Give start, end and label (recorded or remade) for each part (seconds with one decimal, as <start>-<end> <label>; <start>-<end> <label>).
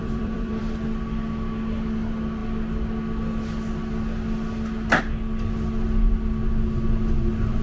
0.0-0.6 remade; 0.6-7.6 recorded